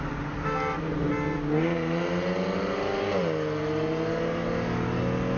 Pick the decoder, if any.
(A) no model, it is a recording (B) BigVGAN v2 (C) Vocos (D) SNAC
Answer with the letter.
A